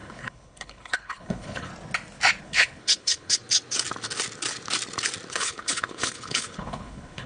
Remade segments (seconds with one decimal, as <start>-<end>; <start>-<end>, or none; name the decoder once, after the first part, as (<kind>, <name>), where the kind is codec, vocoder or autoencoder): 0.0-1.7 (codec, HILCodec); 2.4-3.4; 5.3-7.3